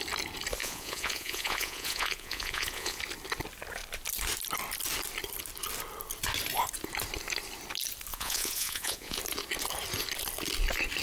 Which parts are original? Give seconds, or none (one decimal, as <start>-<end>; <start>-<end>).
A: 0.0-0.6; 3.0-8.1; 9.2-11.0